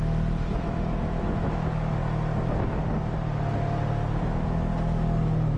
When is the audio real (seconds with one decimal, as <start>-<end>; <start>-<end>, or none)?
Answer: 0.0-0.5; 1.5-5.6